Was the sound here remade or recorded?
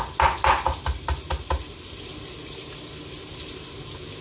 recorded